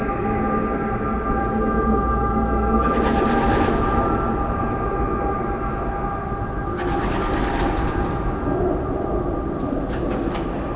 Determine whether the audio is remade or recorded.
recorded